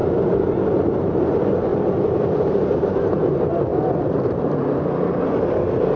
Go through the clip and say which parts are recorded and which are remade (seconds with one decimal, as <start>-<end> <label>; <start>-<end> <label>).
0.0-1.2 remade; 1.2-1.7 recorded; 1.7-2.9 remade; 2.9-3.7 recorded; 3.7-5.4 remade; 5.4-6.0 recorded